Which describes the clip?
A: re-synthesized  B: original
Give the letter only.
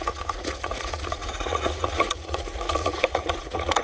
A